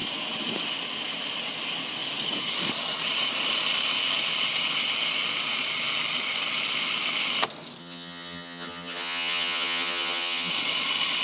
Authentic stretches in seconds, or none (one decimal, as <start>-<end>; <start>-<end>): 0.0-7.8; 10.5-11.2